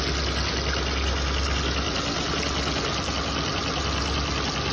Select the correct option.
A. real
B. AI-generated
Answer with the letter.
A